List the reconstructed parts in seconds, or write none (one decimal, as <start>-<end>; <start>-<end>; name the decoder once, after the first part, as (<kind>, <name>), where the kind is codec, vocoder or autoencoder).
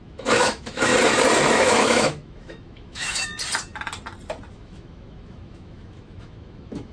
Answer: 0.0-0.9 (autoencoder, DAC-VAE); 1.5-3.3; 4.5-6.9